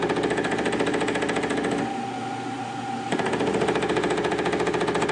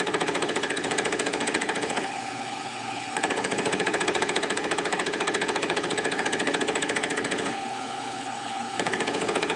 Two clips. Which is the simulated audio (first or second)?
second